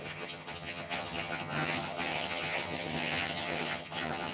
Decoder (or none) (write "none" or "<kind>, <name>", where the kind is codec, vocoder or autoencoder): vocoder, HiFi-GAN